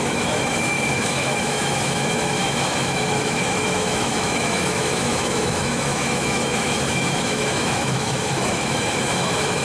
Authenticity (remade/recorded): remade